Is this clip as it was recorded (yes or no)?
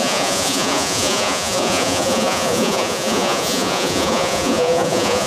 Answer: no